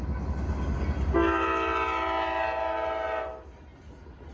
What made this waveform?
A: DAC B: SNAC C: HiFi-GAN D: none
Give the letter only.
D